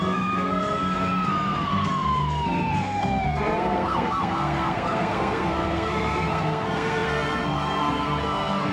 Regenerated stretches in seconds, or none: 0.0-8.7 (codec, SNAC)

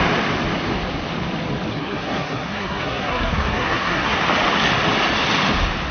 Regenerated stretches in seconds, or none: 1.7-4.2 (codec, SNAC)

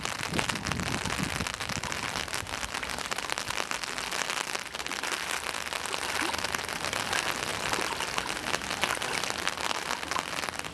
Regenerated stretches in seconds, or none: none

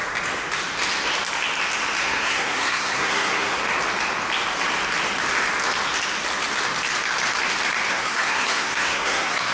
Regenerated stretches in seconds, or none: 2.0-3.6 (codec, SNAC); 7.9-9.5